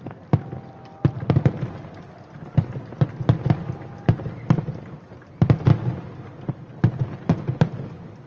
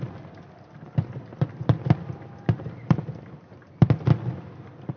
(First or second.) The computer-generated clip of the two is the second